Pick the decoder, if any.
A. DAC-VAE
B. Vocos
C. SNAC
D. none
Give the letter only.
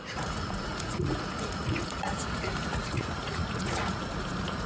B